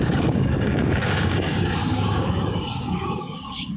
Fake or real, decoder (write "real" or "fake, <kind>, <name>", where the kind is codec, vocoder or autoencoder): fake, codec, DAC